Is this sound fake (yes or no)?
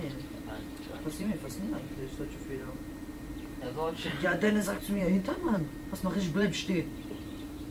yes